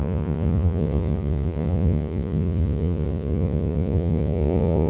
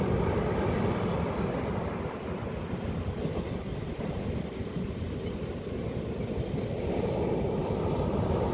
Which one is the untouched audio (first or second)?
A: second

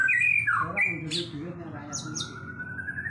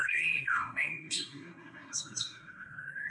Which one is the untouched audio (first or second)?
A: first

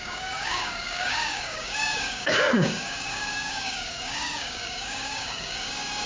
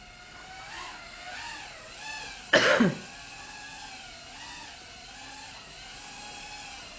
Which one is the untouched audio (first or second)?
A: second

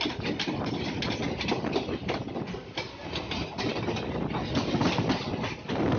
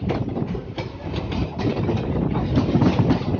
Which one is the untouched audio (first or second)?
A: first